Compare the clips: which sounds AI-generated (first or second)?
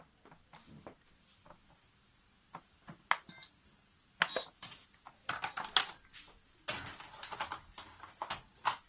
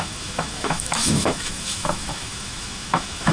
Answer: second